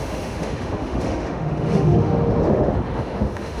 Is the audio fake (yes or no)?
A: yes